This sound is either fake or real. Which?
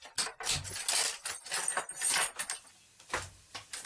real